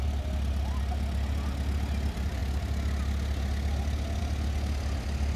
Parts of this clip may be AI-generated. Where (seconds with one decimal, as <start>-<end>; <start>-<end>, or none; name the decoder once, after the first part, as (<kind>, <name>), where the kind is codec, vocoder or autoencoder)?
none

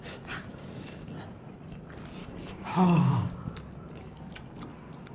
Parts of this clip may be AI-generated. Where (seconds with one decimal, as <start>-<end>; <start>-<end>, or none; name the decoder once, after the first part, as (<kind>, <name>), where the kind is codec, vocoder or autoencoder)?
0.5-1.1 (codec, DAC); 2.2-3.3

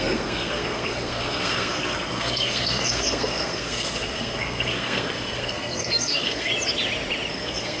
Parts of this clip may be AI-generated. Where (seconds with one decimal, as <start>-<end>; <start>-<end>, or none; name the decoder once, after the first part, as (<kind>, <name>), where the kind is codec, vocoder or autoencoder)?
0.0-6.5 (codec, SNAC); 7.3-7.8

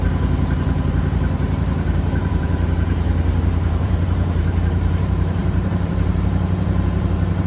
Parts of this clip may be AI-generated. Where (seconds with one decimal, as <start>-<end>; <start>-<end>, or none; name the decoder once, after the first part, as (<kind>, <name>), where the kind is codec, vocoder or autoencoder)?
0.0-7.5 (vocoder, BigVGAN v2)

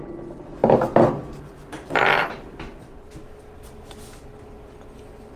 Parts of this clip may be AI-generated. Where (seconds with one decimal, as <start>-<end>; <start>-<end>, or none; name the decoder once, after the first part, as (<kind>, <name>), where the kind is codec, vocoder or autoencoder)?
none

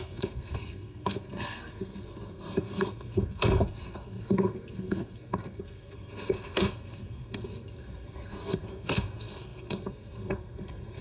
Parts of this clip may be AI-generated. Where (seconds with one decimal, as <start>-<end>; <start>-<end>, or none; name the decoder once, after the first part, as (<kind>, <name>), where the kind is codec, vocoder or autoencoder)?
0.0-11.0 (codec, SNAC)

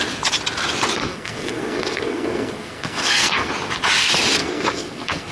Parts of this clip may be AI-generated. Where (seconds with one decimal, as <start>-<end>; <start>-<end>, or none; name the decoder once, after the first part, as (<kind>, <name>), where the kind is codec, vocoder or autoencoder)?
1.0-3.5 (codec, SNAC); 4.4-5.3